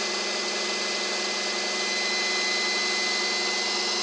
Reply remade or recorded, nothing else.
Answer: recorded